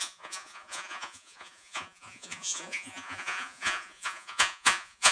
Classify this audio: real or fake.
fake